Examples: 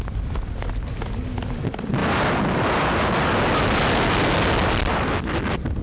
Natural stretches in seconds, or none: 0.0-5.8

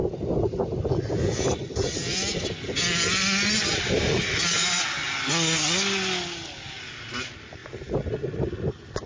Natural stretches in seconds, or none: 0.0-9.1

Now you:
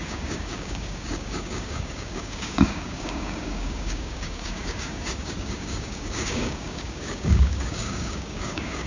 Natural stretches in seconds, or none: none

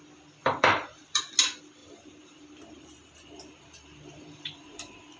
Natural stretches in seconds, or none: 0.0-0.4; 1.2-1.8

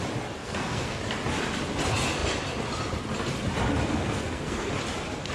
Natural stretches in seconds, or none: 0.0-0.4; 1.0-3.9; 4.7-5.3